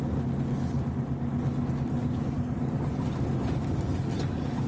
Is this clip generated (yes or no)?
no